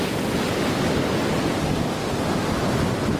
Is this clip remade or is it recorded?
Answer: recorded